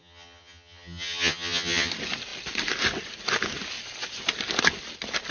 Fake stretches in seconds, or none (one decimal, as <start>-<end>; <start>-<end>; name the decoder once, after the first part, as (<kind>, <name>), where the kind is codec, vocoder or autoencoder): 0.0-1.9 (vocoder, HiFi-GAN)